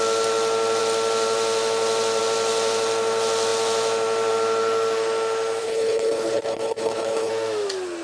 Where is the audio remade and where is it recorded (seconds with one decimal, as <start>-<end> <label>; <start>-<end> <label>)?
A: 0.0-5.6 recorded; 5.6-7.3 remade; 7.3-8.0 recorded